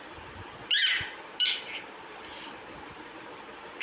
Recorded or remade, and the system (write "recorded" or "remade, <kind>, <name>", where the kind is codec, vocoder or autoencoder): remade, vocoder, BigVGAN v2